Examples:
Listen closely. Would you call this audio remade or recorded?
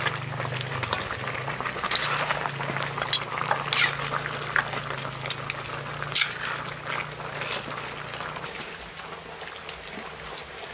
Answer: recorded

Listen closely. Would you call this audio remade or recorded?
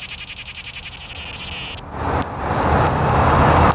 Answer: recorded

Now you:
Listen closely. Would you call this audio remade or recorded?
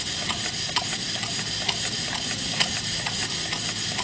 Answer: recorded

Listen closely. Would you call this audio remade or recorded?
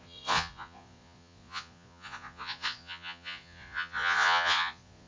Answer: remade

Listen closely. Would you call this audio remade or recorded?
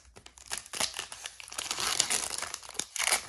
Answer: recorded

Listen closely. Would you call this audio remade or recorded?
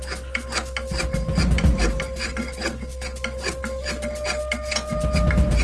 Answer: recorded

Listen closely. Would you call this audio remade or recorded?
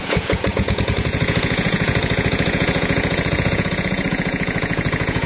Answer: remade